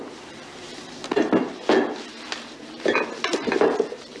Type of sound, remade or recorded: remade